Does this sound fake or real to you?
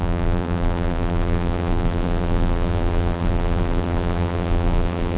fake